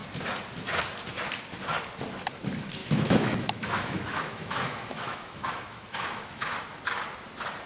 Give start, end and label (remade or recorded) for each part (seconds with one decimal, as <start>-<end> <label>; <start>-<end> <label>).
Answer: 0.0-2.8 recorded; 2.8-6.6 remade; 6.6-7.7 recorded